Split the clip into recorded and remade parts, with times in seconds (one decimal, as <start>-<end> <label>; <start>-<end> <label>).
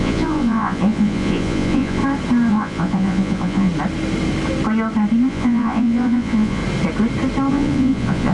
0.0-2.0 remade; 2.0-2.5 recorded; 2.5-3.7 remade; 3.7-5.3 recorded; 5.3-6.6 remade; 6.6-7.5 recorded; 7.5-8.3 remade